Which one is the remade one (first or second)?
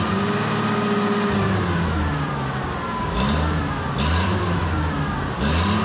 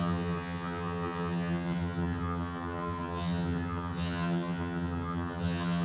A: second